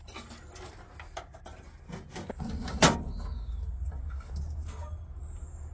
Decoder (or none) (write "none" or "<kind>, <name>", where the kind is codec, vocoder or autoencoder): none